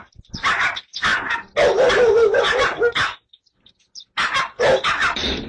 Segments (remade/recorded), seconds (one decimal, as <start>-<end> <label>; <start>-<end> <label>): 0.0-5.5 recorded

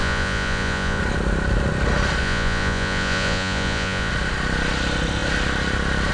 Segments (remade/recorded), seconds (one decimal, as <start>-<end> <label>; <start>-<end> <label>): 0.0-1.0 remade; 1.0-2.2 recorded; 2.2-4.1 remade; 4.1-6.1 recorded

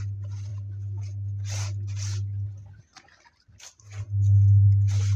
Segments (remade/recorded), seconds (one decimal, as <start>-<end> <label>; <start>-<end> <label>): 0.0-5.2 recorded